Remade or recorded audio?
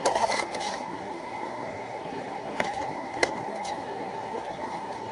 remade